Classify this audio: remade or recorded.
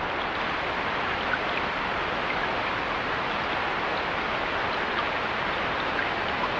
recorded